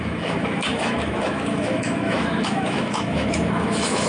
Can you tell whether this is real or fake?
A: fake